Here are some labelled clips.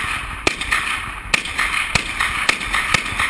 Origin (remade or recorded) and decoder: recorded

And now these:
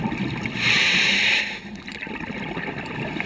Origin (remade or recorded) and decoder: recorded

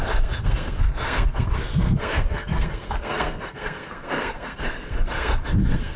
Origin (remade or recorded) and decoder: remade, codec, SNAC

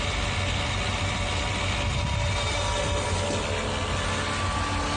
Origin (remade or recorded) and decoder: recorded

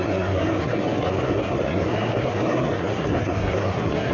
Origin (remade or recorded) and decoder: remade, codec, SNAC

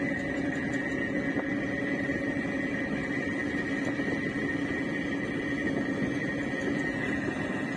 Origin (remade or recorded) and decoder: recorded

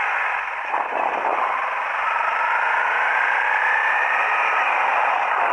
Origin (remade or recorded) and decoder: recorded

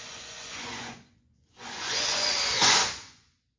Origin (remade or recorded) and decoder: remade, vocoder, Vocos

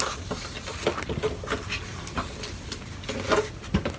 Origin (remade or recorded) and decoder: recorded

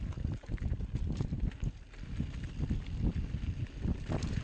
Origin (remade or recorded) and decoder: recorded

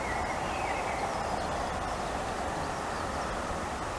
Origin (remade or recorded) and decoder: recorded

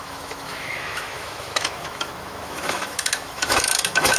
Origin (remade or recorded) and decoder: remade, autoencoder, DAC-VAE